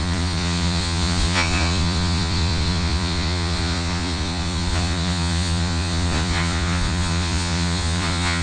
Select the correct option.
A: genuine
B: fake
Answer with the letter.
B